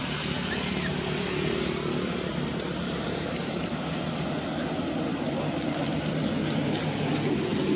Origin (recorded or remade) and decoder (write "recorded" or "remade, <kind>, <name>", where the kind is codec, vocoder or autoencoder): recorded